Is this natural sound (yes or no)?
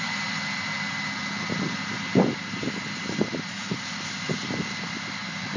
yes